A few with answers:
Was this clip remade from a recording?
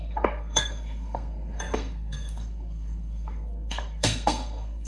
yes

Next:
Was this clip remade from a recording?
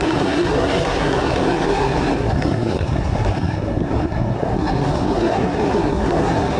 yes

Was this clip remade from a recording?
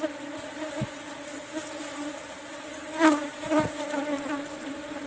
no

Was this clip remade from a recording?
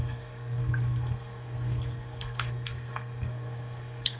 yes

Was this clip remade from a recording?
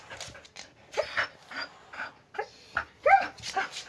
no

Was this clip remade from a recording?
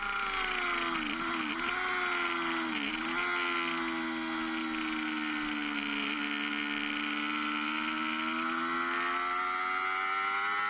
no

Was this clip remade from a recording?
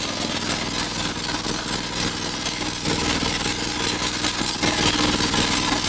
no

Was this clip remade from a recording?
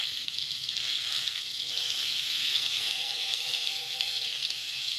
yes